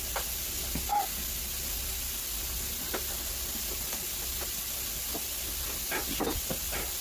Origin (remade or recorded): recorded